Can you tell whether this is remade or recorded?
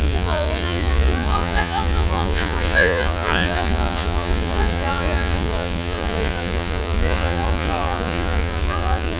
remade